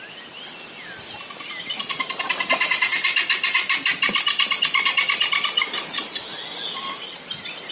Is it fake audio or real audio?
real